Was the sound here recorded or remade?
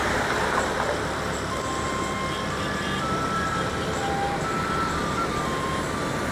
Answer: recorded